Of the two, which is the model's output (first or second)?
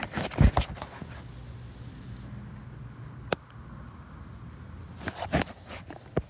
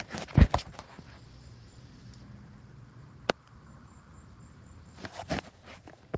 second